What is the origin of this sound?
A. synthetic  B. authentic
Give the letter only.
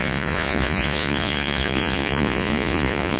A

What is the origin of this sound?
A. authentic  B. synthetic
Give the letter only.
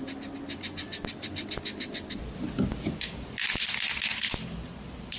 A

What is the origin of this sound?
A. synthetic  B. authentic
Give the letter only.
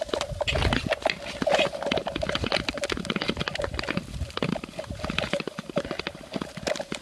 B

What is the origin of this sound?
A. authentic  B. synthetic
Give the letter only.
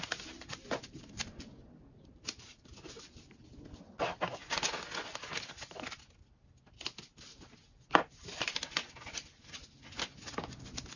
A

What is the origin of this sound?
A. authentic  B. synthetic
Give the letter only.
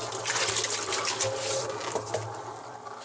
A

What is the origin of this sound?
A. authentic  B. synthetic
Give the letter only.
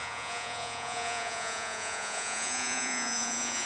B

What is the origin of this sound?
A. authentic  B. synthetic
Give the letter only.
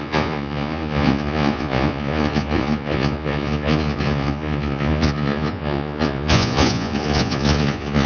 B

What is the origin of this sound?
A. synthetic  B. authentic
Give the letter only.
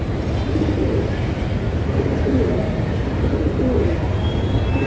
B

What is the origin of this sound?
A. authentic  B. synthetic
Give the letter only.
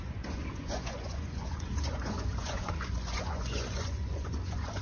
B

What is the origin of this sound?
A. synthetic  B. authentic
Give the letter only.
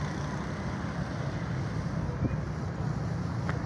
B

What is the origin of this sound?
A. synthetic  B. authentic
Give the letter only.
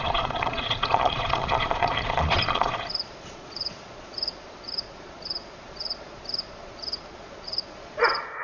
A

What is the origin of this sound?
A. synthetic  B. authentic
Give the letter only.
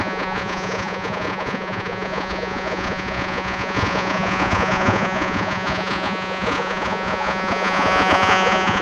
A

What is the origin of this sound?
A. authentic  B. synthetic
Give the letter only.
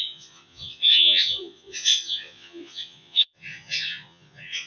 B